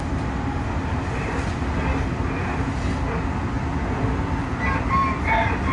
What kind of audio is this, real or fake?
real